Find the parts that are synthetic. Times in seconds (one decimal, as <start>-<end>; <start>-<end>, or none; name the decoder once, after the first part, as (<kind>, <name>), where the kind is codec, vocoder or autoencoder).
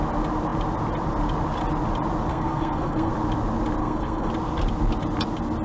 2.3-3.1 (codec, SNAC); 3.8-4.3